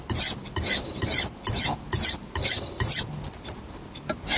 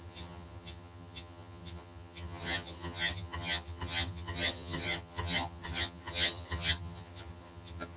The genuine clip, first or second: first